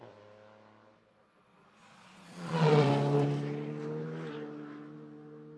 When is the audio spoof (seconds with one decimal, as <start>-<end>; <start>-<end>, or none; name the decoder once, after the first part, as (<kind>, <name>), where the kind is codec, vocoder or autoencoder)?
1.1-2.9 (vocoder, Vocos)